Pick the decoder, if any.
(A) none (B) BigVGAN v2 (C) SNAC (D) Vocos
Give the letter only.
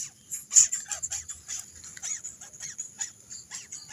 A